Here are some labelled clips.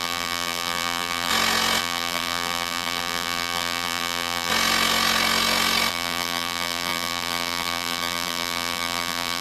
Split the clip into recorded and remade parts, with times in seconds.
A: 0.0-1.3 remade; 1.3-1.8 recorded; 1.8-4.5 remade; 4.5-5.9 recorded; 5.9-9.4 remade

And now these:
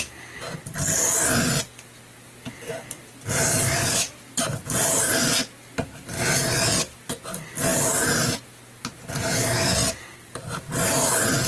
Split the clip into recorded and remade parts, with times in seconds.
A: 0.0-2.2 recorded; 2.2-5.0 remade; 5.0-9.8 recorded; 9.8-10.6 remade; 10.6-11.5 recorded

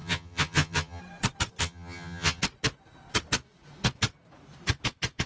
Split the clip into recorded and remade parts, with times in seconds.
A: 0.0-1.0 remade; 1.0-1.6 recorded; 1.6-2.4 remade; 2.4-5.3 recorded